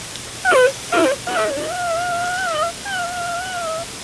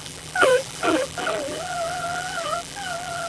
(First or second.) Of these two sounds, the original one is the first